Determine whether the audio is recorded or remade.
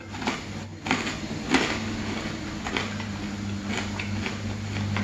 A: recorded